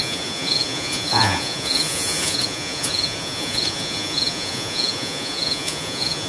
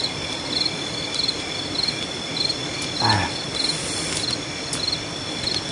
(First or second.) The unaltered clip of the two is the second